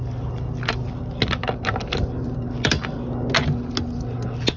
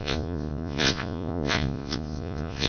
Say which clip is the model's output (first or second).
second